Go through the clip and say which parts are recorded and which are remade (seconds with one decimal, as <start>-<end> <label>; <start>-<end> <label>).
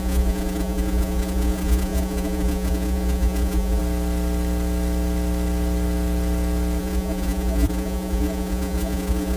0.0-3.8 remade; 3.8-6.8 recorded; 6.8-9.4 remade